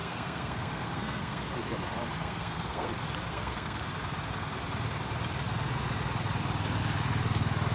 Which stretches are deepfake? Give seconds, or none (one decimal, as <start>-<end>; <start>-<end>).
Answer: 0.0-1.5; 2.2-2.9; 3.3-3.9